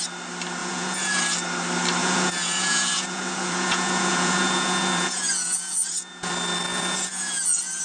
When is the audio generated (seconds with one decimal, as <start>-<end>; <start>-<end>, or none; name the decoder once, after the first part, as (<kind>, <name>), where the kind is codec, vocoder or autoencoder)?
0.6-1.2 (vocoder, Vocos); 2.0-6.3; 6.7-7.8